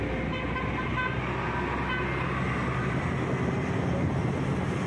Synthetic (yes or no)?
no